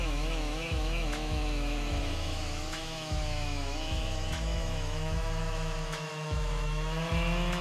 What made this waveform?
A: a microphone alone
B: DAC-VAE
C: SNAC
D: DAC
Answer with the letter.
B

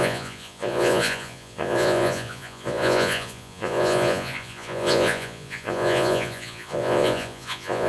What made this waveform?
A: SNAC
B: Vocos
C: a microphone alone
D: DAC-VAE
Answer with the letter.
B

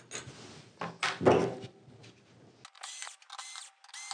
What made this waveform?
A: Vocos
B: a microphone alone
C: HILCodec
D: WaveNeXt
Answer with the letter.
B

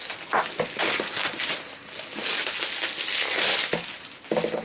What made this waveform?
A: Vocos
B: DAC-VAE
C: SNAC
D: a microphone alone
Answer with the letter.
D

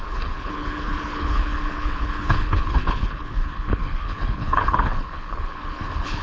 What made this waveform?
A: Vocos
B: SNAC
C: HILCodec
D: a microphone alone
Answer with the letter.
C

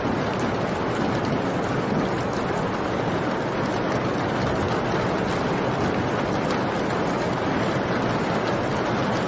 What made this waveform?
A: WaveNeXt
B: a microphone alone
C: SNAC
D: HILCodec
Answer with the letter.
B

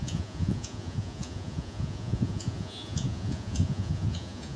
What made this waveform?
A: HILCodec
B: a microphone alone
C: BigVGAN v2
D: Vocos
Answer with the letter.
D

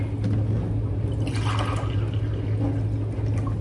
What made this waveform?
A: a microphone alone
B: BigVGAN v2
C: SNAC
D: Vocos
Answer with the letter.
A